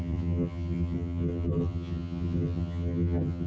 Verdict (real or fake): fake